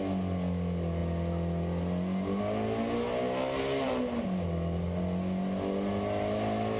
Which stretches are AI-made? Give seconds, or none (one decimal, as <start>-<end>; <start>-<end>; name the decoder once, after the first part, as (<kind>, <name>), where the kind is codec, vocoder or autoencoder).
none